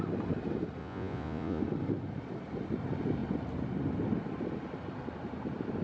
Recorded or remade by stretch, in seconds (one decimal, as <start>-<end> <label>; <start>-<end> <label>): 0.0-0.8 recorded; 0.8-1.6 remade; 1.6-5.8 recorded